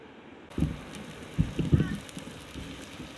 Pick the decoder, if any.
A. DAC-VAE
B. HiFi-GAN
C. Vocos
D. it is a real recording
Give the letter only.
D